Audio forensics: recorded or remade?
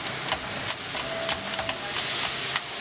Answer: recorded